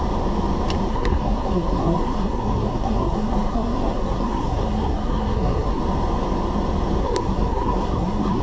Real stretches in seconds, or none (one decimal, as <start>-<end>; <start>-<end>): 0.0-0.9; 5.8-7.0